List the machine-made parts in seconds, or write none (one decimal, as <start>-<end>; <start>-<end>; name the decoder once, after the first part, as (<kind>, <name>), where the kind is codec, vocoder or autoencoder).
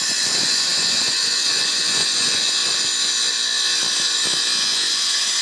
0.0-2.6 (vocoder, Vocos); 4.6-5.4